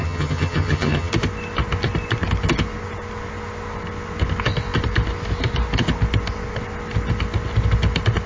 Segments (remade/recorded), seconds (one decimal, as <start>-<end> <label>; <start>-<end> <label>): 0.0-1.1 remade; 1.1-8.3 recorded